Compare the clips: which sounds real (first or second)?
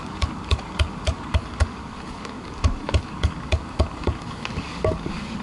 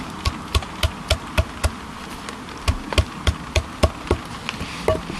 second